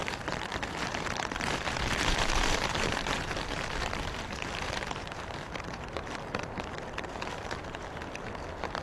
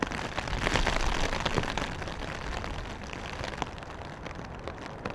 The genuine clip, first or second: second